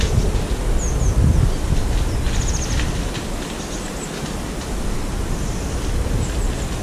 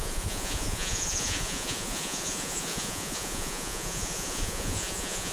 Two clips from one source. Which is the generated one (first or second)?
second